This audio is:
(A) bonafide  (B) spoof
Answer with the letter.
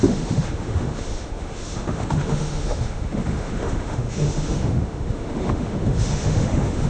B